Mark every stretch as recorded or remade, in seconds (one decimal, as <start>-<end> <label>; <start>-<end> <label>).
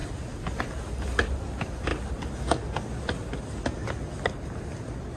0.0-5.2 recorded